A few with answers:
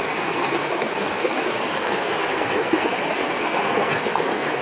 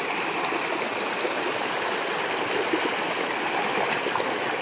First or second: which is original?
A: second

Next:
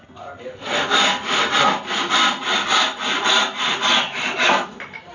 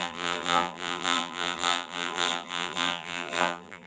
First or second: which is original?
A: first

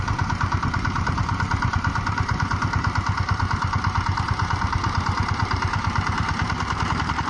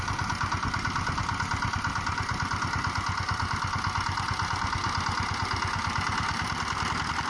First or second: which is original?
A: second